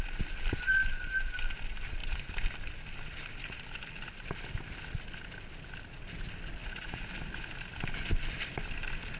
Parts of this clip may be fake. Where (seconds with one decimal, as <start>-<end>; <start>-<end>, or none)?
6.6-7.1